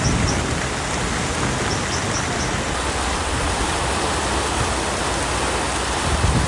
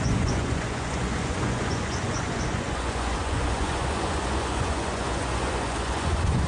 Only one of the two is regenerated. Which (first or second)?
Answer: second